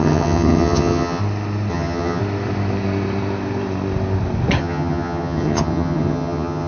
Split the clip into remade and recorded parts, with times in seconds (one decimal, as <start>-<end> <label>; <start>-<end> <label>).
0.0-1.2 remade; 1.2-1.7 recorded; 1.7-2.2 remade; 2.2-4.6 recorded; 4.6-6.7 remade

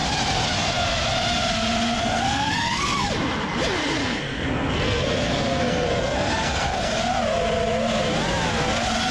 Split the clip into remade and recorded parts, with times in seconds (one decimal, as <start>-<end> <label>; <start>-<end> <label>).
0.0-2.0 recorded; 2.0-3.1 remade; 3.1-4.0 recorded; 4.0-7.0 remade; 7.0-9.1 recorded